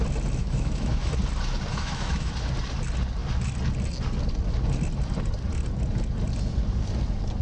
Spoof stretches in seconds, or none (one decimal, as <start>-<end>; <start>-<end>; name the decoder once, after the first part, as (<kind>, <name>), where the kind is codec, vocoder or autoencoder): 0.4-1.1 (autoencoder, DAC-VAE); 1.7-2.3